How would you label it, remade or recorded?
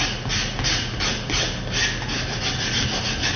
recorded